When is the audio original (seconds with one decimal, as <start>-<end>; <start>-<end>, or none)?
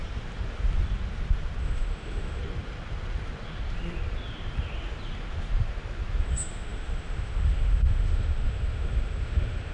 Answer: 0.0-1.6; 2.4-6.2